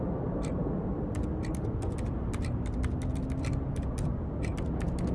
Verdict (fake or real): real